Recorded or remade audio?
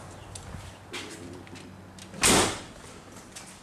recorded